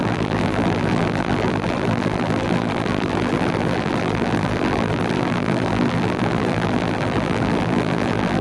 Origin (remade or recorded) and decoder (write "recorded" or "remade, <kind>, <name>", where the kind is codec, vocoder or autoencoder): remade, vocoder, BigVGAN v2